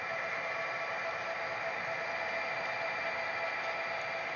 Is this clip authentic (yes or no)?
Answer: yes